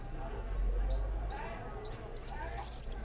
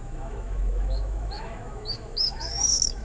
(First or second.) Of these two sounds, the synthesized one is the second